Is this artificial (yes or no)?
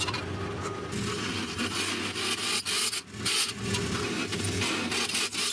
no